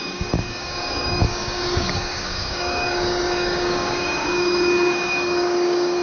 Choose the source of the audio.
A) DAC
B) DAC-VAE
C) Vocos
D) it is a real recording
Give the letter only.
A